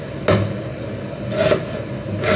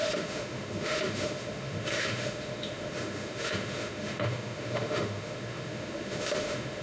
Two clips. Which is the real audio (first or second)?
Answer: first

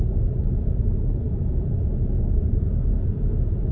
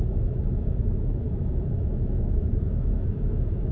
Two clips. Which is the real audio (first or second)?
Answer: first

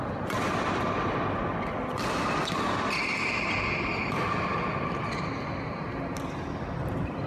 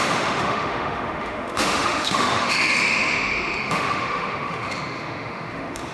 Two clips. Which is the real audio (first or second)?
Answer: first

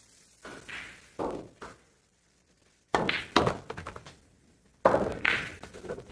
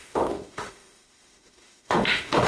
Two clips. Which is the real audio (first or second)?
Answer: first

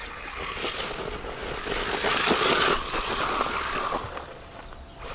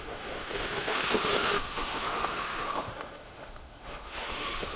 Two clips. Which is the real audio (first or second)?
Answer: first